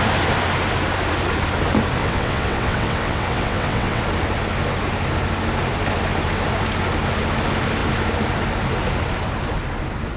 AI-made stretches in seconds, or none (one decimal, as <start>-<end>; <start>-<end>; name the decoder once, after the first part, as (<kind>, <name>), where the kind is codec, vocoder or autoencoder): 2.0-4.0 (vocoder, WaveNeXt)